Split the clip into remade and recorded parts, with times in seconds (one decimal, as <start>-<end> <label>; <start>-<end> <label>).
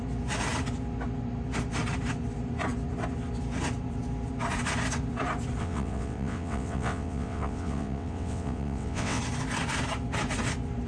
0.0-5.6 recorded; 5.6-9.2 remade; 9.2-10.9 recorded